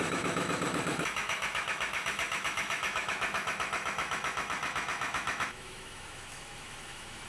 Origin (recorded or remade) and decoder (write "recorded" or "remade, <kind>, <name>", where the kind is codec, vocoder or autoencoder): remade, autoencoder, DAC-VAE